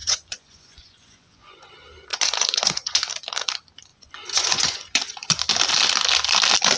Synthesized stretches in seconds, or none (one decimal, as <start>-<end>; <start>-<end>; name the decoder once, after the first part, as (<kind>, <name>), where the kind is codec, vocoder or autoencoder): 0.0-1.7 (vocoder, Vocos); 2.1-3.1; 3.9-5.4